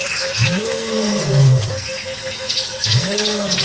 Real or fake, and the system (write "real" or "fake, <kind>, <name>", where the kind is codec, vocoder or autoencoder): fake, codec, SNAC